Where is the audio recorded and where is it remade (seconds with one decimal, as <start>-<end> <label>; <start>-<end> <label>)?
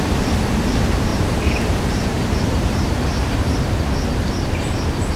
0.0-1.1 recorded; 1.1-3.1 remade; 3.1-5.2 recorded